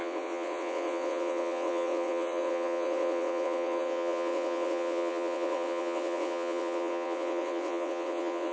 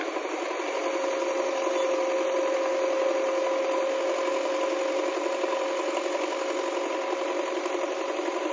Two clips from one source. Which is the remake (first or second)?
first